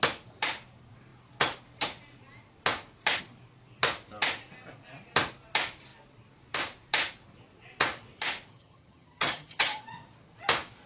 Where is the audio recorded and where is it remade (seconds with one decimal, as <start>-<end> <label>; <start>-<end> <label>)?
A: 0.0-8.5 recorded; 8.5-9.8 remade; 9.8-10.9 recorded